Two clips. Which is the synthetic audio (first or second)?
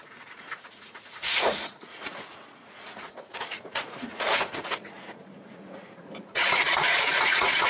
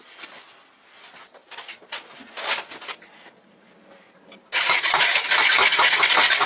first